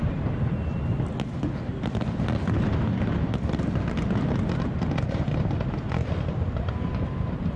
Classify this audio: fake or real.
real